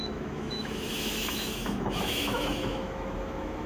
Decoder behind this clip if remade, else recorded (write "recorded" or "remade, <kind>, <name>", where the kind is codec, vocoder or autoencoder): remade, autoencoder, DAC-VAE